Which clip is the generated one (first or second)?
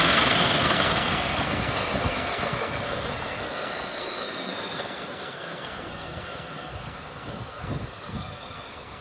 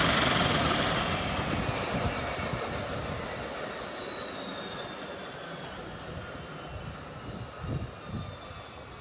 first